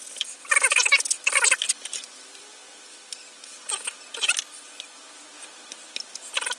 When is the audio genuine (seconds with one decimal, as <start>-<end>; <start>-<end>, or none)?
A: 0.0-6.6